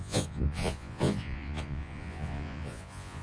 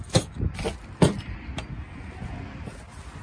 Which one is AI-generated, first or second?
first